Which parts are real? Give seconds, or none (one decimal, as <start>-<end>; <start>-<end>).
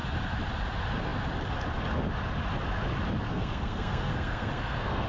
0.0-3.3